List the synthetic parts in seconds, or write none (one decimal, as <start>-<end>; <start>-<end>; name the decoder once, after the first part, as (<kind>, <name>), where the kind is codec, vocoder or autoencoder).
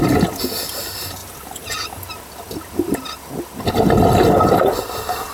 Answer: none